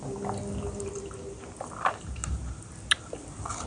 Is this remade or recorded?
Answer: recorded